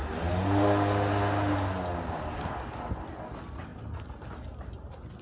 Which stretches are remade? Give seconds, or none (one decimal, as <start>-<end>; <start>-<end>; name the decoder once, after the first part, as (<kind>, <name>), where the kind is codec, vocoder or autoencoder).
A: none